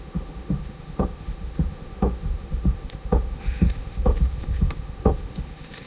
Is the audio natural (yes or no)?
no